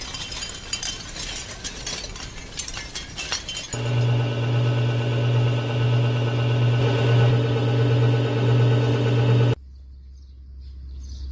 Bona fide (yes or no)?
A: yes